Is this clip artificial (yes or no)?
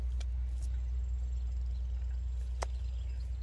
no